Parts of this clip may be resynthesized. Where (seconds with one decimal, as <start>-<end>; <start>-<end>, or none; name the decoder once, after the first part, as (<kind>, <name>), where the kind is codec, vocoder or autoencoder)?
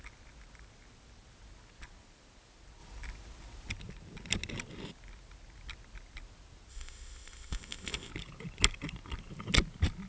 6.7-8.1 (codec, ZipCodec)